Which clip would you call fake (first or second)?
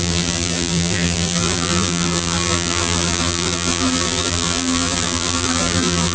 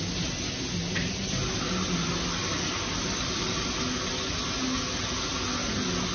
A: first